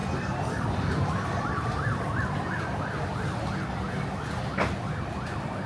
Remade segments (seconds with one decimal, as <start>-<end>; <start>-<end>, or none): 1.1-3.1; 4.6-5.7